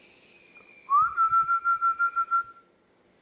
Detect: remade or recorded recorded